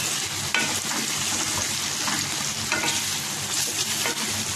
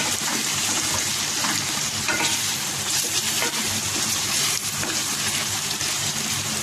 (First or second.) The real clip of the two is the first